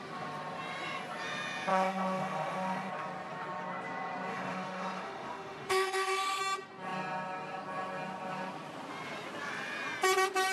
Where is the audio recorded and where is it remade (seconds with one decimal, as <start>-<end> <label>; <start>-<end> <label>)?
0.0-1.7 recorded; 1.7-2.9 remade; 2.9-4.3 recorded; 4.3-6.4 remade; 6.4-10.5 recorded